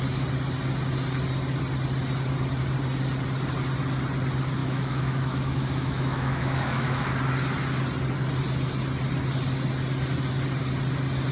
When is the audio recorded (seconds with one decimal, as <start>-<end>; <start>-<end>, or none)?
0.0-4.6; 7.1-11.3

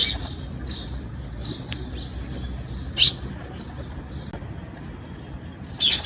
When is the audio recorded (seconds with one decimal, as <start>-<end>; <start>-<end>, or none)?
0.0-6.1

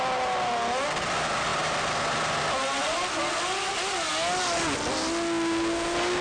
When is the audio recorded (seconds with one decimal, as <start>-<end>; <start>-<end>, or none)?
0.0-6.2

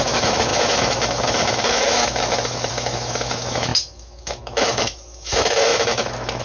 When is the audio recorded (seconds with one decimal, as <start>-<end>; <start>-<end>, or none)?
none

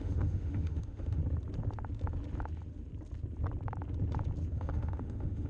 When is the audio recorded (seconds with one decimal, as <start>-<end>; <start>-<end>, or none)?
1.2-4.5

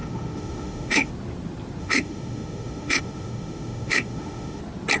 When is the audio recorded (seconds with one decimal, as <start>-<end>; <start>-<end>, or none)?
1.1-1.8; 4.6-5.0